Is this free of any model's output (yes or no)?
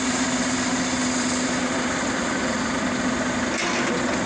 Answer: yes